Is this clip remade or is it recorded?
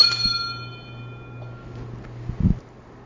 recorded